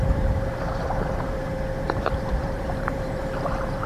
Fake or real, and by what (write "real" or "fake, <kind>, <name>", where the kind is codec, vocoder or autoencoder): fake, vocoder, BigVGAN v2